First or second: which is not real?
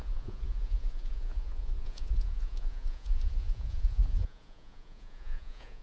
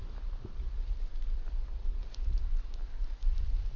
first